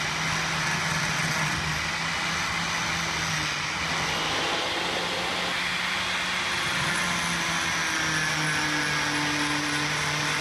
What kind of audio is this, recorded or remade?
recorded